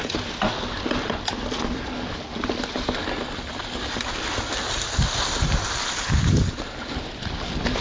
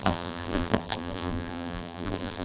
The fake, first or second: second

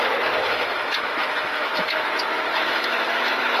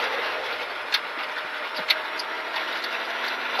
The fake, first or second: first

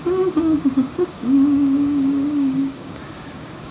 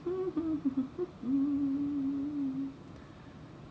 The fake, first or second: first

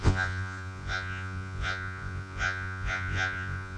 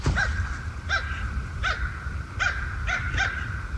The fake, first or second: first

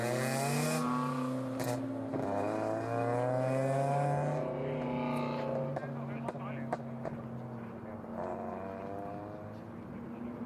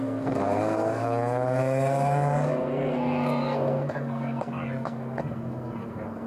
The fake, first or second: second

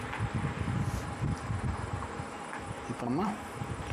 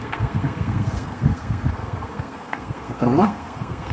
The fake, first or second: second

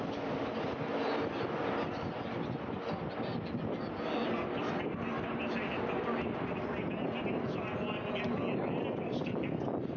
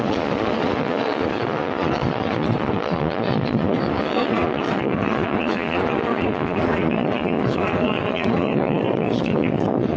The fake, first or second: second